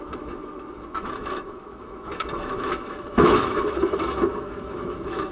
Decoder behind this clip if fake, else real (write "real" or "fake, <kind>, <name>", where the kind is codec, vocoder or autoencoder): fake, autoencoder, DAC-VAE